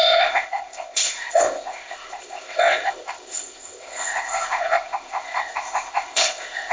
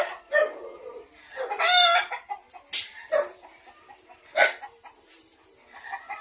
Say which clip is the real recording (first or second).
second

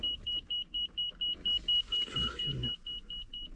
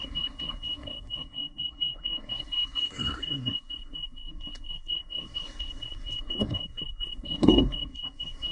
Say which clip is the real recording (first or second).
first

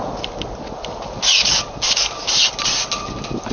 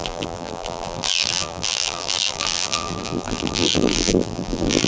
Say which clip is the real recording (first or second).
first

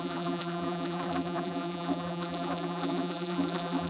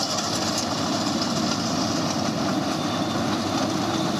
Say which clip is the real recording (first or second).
second